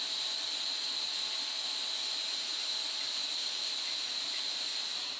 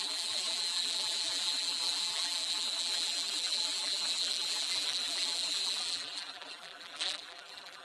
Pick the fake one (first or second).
second